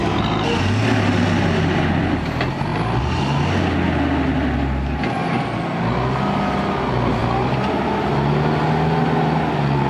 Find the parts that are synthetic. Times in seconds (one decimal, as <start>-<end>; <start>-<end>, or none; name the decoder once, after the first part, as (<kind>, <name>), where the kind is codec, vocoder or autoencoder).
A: none